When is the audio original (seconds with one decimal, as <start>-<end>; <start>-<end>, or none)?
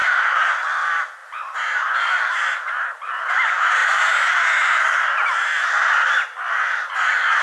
0.5-1.2; 3.3-3.8; 5.7-7.4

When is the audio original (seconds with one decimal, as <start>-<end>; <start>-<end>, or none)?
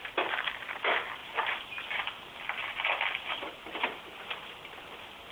0.0-5.3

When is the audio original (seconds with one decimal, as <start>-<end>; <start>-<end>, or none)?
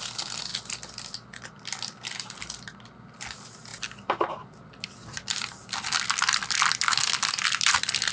0.0-8.1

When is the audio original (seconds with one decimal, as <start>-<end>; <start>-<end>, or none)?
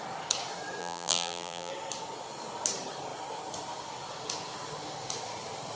0.0-0.8; 1.7-5.8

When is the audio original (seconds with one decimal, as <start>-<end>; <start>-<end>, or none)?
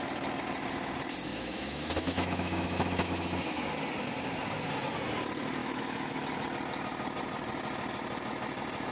0.0-1.3; 3.6-5.6; 6.2-8.9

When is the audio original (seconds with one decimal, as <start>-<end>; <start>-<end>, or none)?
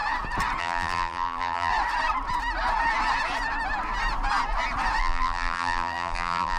0.0-0.6; 1.7-5.0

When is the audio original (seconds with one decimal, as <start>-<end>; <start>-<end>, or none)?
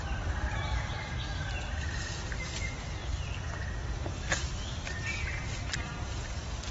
0.0-0.6; 1.9-3.1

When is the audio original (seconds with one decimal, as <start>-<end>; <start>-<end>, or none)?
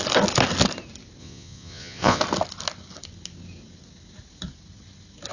0.0-1.2; 2.2-5.3